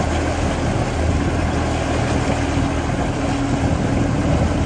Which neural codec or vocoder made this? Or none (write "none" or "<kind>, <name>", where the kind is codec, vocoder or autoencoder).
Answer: none